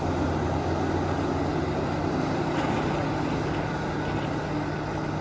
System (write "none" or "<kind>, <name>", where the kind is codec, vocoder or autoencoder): none